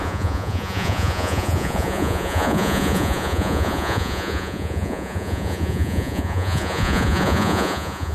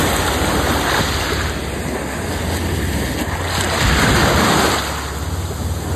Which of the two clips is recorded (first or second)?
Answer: second